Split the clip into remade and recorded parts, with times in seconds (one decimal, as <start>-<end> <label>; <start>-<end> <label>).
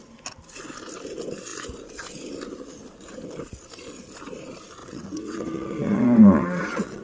0.0-4.8 recorded; 4.8-7.0 remade